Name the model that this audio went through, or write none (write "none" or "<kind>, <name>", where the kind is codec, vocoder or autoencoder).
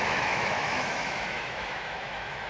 autoencoder, DAC-VAE